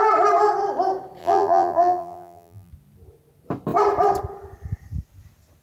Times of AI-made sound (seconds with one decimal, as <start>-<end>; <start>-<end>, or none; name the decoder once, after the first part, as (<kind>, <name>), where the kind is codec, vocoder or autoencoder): 1.2-2.7 (vocoder, BigVGAN v2)

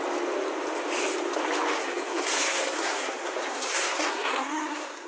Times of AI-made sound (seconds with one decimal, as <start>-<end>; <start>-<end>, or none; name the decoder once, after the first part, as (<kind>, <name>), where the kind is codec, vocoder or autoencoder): 1.8-5.1 (codec, SNAC)

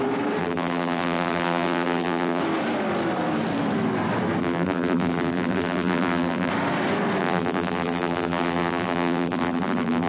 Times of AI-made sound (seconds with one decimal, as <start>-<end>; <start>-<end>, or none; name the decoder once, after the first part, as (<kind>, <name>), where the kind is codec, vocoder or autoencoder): 0.4-2.4 (vocoder, BigVGAN v2); 4.4-6.5; 7.2-10.1

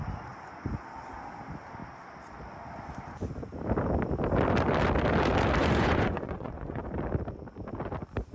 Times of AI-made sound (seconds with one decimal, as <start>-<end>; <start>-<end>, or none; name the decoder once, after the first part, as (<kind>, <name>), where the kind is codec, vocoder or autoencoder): 5.6-6.8 (vocoder, Vocos)

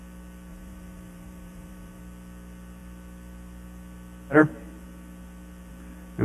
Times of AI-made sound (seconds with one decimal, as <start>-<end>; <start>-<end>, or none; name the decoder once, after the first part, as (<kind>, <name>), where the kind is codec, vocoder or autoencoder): 0.5-2.0 (vocoder, BigVGAN v2)

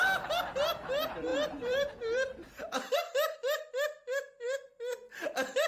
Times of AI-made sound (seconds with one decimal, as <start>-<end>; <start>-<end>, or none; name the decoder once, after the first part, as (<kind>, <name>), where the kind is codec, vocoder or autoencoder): 1.3-3.0 (vocoder, BigVGAN v2)

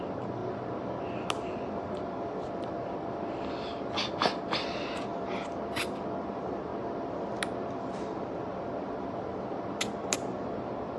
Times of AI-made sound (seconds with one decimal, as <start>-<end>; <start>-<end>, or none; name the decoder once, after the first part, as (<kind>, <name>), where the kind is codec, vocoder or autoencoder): none

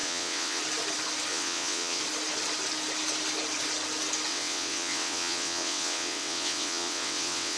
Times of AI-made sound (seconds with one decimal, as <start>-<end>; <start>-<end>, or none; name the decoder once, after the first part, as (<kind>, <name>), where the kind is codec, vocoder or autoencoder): 0.0-0.6 (vocoder, WaveNeXt); 1.3-2.0; 4.3-7.6